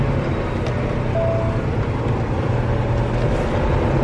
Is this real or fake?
real